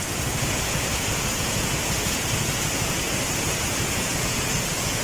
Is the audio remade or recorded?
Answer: remade